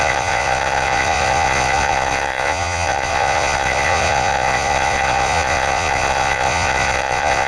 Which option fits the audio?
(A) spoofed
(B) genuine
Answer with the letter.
A